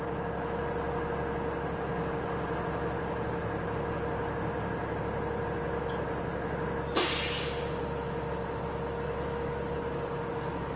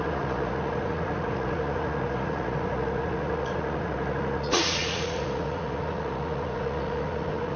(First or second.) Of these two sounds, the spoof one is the second